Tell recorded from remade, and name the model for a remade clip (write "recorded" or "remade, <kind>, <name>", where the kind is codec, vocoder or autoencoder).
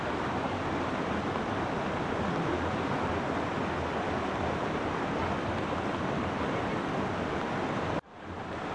recorded